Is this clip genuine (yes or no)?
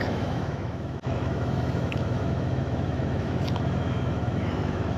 no